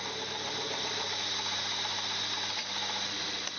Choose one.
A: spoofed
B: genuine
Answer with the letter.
B